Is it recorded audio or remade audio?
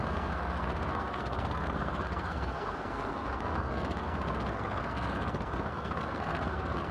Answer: remade